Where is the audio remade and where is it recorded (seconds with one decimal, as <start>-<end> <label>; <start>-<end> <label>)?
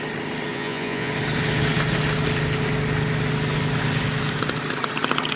0.0-0.5 recorded; 0.5-1.1 remade; 1.1-5.4 recorded